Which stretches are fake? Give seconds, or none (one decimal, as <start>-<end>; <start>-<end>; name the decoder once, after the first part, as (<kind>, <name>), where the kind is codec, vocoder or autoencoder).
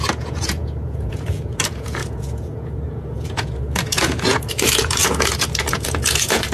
0.0-6.5 (vocoder, Vocos)